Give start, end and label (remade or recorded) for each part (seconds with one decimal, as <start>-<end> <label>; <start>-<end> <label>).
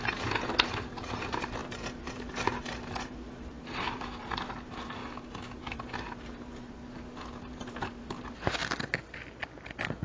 0.0-5.0 remade; 5.0-5.6 recorded; 5.6-8.6 remade; 8.6-10.0 recorded